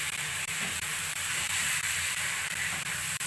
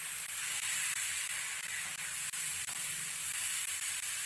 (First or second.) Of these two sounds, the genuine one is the second